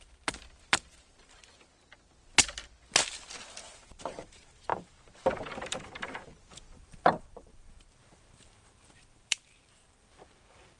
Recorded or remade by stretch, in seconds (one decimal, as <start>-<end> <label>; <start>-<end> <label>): 0.0-1.4 remade; 1.4-3.6 recorded; 3.6-10.8 remade